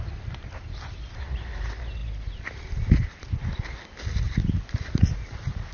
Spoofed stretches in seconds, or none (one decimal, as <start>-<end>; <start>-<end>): none